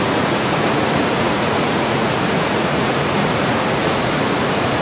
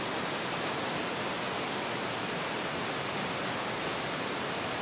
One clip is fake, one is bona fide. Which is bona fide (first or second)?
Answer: second